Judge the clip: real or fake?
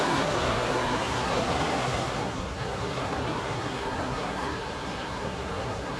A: fake